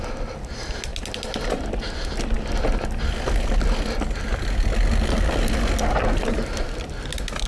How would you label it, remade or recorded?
recorded